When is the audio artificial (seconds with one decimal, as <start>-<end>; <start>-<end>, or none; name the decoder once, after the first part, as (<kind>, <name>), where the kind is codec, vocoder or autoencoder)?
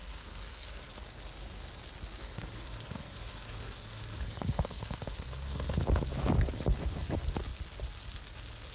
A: 0.0-0.9 (codec, SNAC); 2.2-5.8